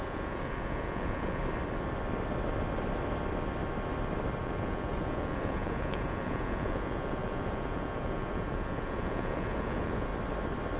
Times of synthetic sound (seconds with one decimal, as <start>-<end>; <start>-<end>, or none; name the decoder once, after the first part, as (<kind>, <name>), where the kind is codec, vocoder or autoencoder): 0.0-1.4 (vocoder, Vocos); 4.4-10.1